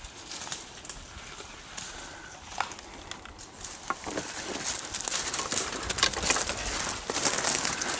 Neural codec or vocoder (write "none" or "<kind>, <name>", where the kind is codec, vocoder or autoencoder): none